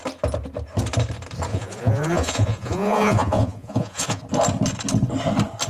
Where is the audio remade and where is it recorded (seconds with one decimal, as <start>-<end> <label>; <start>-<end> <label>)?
0.0-1.5 recorded; 1.5-4.2 remade; 4.2-5.7 recorded